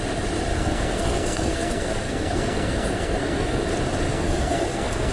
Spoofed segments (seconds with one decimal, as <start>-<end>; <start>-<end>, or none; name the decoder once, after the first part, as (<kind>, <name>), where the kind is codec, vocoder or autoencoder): 0.5-3.6 (codec, SNAC); 4.1-5.1